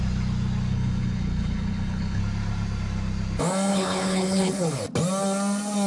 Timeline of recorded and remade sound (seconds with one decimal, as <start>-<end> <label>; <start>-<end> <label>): 0.0-0.7 recorded; 0.7-2.2 remade; 2.2-3.7 recorded; 3.7-4.8 remade; 4.8-5.9 recorded